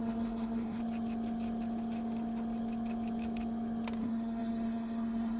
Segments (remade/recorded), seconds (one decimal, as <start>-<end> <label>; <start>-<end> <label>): 0.0-0.8 remade; 0.8-4.0 recorded; 4.0-5.4 remade